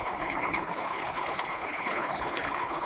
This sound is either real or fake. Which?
fake